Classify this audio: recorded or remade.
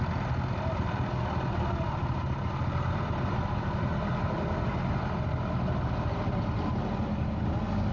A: recorded